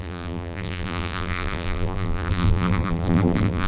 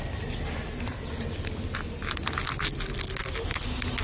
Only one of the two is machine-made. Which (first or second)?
first